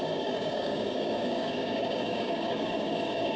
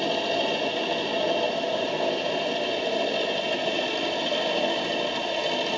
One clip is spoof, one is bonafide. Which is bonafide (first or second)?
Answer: second